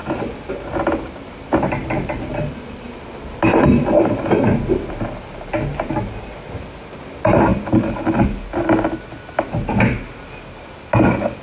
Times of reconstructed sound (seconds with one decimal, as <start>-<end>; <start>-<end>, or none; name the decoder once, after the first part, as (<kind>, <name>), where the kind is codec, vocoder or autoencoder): none